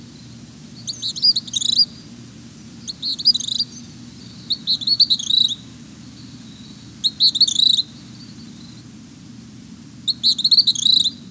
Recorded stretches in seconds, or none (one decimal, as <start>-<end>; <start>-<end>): 0.0-11.3